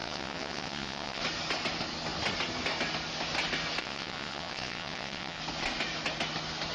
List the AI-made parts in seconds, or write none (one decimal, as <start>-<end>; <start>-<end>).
0.0-1.2; 3.8-5.4